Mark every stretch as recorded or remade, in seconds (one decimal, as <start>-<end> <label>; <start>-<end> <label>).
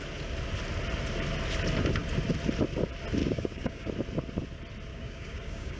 0.0-3.2 recorded; 3.2-3.9 remade; 3.9-4.9 recorded; 4.9-5.8 remade